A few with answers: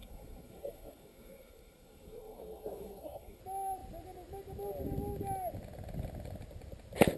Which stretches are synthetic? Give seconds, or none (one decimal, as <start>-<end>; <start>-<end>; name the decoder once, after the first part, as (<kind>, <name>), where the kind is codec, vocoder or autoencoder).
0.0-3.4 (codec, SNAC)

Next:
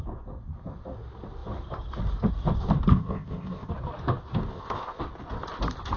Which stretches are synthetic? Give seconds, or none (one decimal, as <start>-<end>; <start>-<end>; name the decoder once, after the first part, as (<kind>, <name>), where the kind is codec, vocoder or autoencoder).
2.9-3.7 (codec, ZipCodec); 4.5-5.0

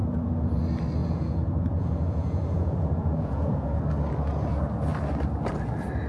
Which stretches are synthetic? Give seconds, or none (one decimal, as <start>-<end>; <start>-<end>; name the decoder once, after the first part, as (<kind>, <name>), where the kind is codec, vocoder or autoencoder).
0.0-0.5 (vocoder, Vocos); 1.0-3.8

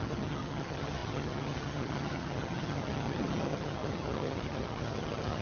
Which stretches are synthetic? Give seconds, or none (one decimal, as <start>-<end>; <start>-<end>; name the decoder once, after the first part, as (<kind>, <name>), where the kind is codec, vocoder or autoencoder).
0.0-5.4 (vocoder, HiFi-GAN)